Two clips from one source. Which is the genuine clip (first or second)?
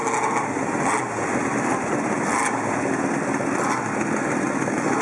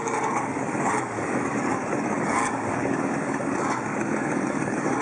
first